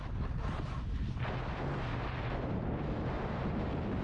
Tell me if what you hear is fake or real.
real